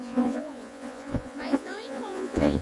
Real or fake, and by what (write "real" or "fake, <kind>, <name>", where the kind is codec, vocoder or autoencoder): fake, vocoder, Vocos